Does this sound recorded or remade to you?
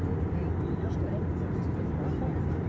recorded